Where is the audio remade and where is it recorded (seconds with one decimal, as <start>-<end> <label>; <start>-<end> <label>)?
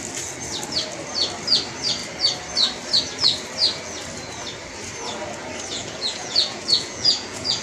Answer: 0.0-5.7 recorded; 5.7-7.6 remade